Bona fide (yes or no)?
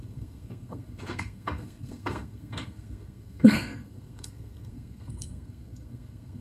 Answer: no